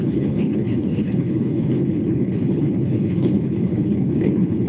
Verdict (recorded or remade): remade